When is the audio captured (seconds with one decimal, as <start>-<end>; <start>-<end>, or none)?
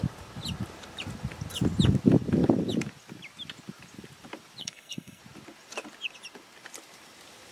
0.0-4.6; 5.2-7.5